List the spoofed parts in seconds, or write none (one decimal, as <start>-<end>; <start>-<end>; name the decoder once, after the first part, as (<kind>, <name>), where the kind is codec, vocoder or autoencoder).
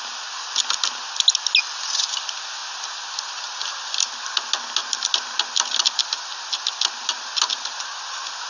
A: none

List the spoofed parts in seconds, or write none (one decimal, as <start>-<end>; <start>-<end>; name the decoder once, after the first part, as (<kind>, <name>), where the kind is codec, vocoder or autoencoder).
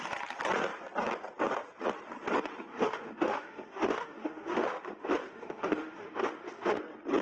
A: 2.7-6.8 (autoencoder, DAC-VAE)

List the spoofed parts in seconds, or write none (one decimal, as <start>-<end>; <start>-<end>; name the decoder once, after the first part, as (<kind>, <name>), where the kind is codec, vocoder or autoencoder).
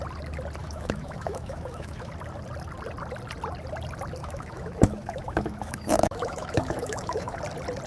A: 0.6-2.1 (autoencoder, DAC-VAE); 4.2-7.4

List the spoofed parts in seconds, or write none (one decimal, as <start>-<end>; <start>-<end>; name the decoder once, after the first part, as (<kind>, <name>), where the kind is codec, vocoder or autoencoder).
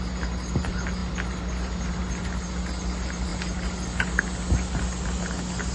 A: none